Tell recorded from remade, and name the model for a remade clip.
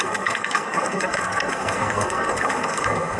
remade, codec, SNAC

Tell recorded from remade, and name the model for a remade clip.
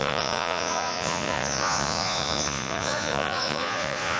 remade, vocoder, Vocos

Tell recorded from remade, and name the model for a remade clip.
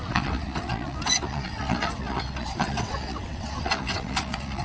remade, vocoder, WaveNeXt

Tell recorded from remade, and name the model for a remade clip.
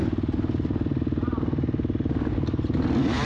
recorded